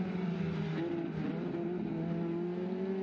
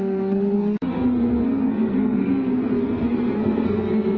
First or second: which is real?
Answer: first